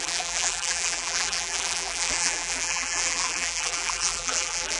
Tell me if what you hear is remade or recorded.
remade